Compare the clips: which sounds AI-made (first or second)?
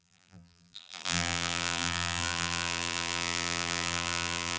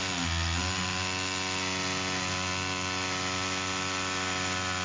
first